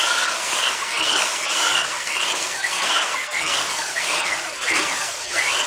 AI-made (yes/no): yes